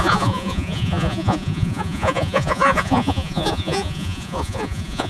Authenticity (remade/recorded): remade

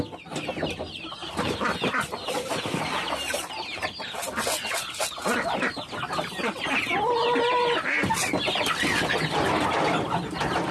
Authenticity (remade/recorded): recorded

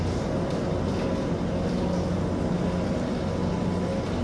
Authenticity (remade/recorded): recorded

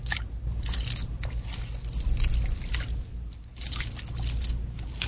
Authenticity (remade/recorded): recorded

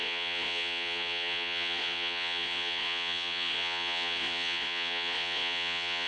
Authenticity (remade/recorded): remade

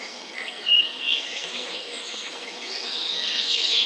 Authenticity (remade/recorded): remade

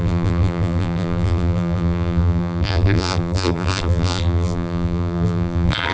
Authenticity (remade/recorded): remade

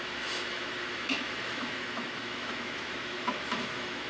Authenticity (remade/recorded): remade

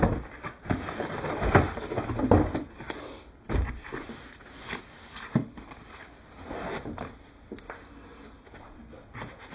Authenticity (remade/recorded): recorded